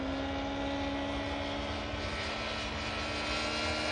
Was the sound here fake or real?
real